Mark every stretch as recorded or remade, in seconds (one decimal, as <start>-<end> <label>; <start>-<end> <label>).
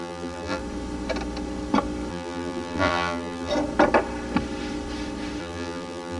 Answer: 0.0-0.6 remade; 0.6-2.1 recorded; 2.1-3.5 remade; 3.5-5.4 recorded; 5.4-6.2 remade